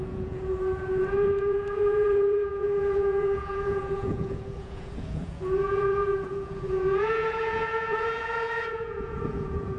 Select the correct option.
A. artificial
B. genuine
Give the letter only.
A